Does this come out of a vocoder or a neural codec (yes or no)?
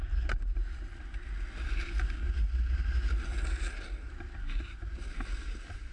no